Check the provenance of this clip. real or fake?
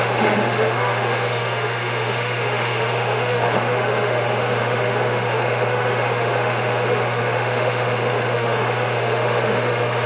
fake